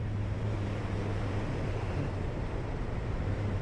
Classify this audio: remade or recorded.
remade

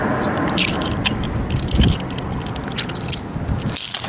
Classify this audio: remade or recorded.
remade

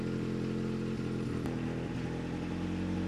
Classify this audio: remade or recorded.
recorded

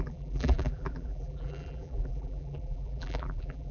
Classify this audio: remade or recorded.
remade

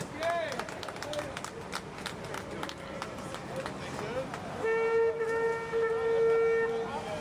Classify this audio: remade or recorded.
recorded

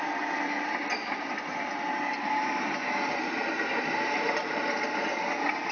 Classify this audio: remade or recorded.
remade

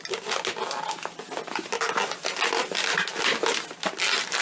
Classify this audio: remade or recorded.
recorded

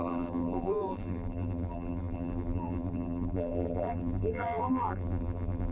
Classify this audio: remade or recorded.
remade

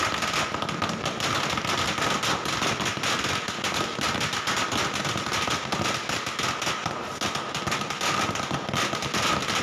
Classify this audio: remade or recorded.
recorded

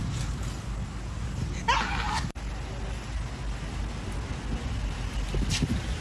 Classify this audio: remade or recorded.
recorded